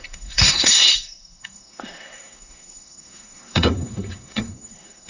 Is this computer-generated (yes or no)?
yes